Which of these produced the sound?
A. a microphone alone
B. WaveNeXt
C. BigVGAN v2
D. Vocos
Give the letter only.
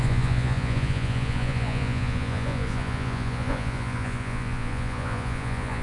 D